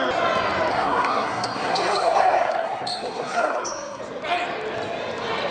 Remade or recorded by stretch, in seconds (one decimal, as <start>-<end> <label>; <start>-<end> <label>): 0.0-0.7 recorded; 0.7-4.0 remade; 4.0-5.5 recorded